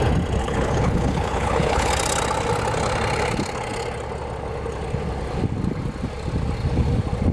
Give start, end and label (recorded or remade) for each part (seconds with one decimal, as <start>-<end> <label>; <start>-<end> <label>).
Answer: 0.0-0.4 recorded; 0.4-1.9 remade; 1.9-7.3 recorded